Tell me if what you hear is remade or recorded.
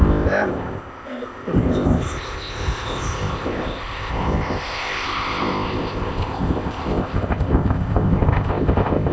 remade